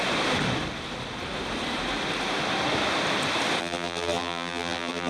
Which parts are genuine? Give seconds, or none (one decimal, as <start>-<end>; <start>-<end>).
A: 0.0-3.6